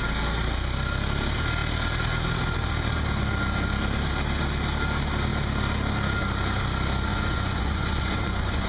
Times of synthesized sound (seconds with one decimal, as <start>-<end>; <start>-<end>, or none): 7.1-8.7